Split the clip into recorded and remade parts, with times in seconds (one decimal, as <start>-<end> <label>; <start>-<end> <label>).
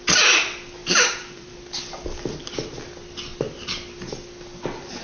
0.0-0.8 recorded; 0.8-1.5 remade; 1.5-5.0 recorded